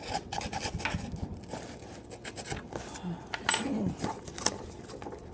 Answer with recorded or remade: recorded